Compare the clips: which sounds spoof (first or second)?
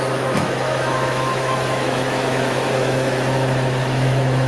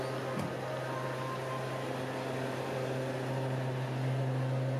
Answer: first